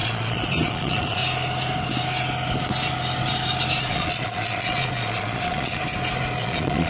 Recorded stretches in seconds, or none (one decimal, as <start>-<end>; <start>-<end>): 1.2-3.9; 5.8-6.4